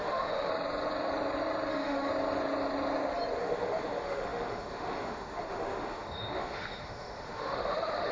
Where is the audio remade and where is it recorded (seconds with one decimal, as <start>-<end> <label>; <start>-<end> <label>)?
0.0-0.5 remade; 0.5-1.7 recorded; 1.7-2.1 remade; 2.1-3.4 recorded; 3.4-8.1 remade